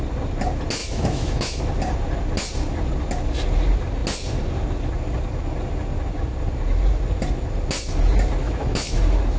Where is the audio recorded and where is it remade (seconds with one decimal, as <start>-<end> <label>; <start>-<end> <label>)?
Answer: 0.0-0.8 recorded; 0.8-1.6 remade; 1.6-8.4 recorded; 8.4-9.0 remade; 9.0-9.4 recorded